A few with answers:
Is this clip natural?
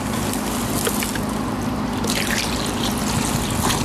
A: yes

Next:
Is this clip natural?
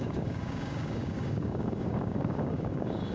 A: no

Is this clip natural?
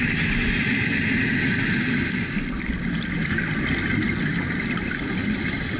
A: yes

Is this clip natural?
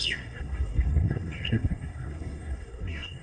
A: no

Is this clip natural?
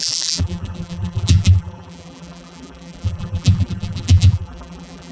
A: no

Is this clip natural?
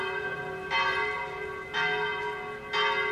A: yes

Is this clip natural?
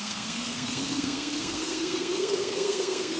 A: no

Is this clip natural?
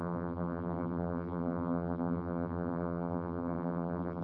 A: no